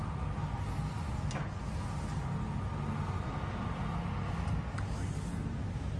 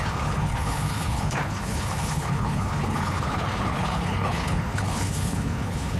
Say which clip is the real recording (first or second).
first